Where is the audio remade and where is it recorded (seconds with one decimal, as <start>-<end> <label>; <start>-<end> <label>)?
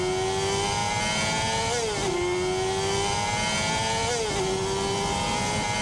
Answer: 0.0-5.8 recorded